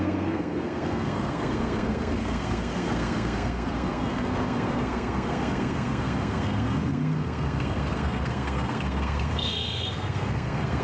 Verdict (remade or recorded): remade